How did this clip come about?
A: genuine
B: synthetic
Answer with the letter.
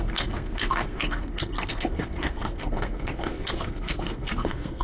B